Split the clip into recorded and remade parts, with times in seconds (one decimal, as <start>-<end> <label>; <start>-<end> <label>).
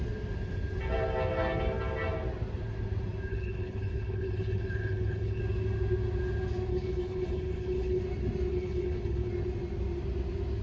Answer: 0.0-3.3 recorded; 3.3-5.4 remade; 5.4-6.7 recorded; 6.7-8.0 remade; 8.0-8.5 recorded; 8.5-9.3 remade; 9.3-10.6 recorded